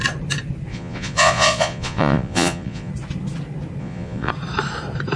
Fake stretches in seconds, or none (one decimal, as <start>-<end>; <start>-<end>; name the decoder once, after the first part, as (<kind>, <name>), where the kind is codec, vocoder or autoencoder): 0.7-2.9 (vocoder, Vocos); 3.8-4.3

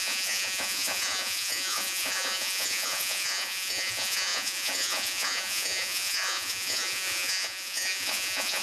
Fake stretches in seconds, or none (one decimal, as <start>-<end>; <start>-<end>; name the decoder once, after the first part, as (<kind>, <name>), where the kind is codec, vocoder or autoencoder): 0.0-8.6 (vocoder, Vocos)

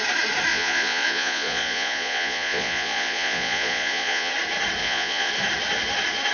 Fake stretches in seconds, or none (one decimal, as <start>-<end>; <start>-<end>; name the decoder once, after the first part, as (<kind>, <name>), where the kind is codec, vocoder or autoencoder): 0.5-4.3 (vocoder, Vocos); 4.8-5.3

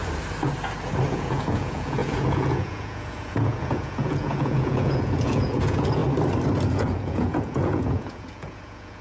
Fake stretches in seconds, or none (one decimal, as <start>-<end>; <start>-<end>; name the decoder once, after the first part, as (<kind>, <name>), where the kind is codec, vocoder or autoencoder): 1.1-6.0 (vocoder, Vocos); 6.7-9.0